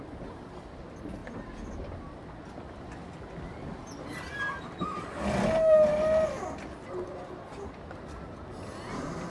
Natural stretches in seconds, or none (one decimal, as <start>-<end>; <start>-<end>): 0.0-9.3